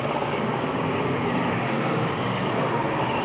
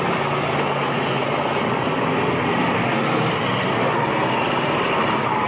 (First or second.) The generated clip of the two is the first